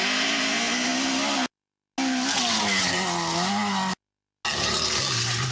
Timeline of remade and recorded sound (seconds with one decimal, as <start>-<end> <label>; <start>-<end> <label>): 0.0-5.5 recorded